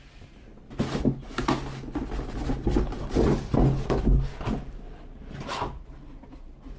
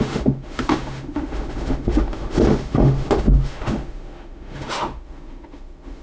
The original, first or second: first